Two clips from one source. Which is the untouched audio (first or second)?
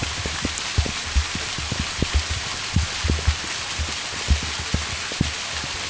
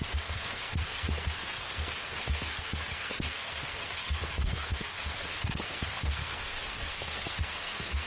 first